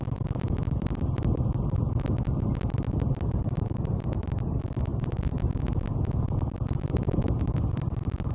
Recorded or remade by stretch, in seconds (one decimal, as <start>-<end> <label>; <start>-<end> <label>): 0.0-4.9 recorded; 4.9-5.6 remade; 5.6-8.3 recorded